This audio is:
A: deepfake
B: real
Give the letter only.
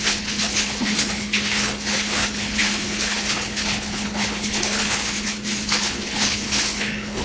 A